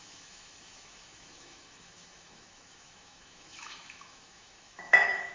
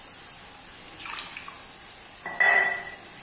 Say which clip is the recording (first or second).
second